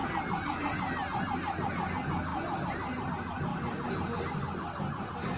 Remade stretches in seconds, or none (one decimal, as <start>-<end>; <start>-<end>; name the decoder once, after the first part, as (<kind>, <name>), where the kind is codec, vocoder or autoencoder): 0.0-1.1 (vocoder, BigVGAN v2); 2.3-3.1; 3.5-4.2